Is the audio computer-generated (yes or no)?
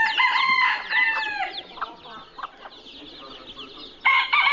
no